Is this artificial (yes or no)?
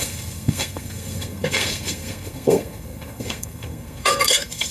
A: yes